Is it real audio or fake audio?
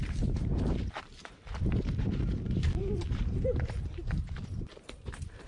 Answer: fake